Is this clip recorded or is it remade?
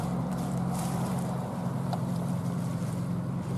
remade